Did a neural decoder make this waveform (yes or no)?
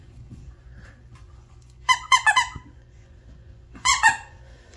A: yes